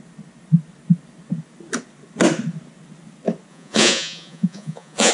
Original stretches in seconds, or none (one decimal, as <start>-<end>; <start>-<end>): 0.0-3.5